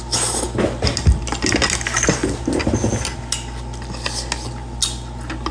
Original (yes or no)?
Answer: yes